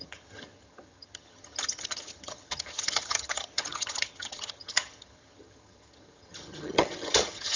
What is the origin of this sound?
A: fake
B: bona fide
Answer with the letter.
A